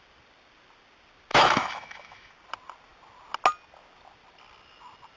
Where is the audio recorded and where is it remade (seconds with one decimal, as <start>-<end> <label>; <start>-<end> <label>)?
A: 0.0-1.3 recorded; 1.3-2.3 remade; 2.3-5.2 recorded